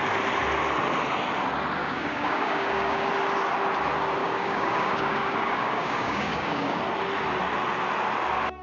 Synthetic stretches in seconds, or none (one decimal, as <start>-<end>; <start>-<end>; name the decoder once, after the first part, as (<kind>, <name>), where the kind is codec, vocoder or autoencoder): 1.8-3.1 (codec, DAC); 4.2-6.8